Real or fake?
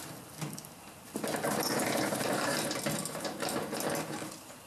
real